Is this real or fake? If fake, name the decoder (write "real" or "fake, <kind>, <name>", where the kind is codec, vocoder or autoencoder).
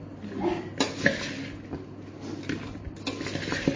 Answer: real